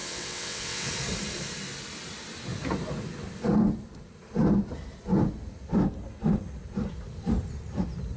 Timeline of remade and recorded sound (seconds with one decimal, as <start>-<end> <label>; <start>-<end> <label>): 0.0-0.9 remade; 0.9-8.2 recorded